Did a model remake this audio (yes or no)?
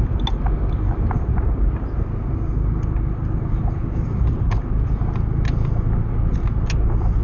no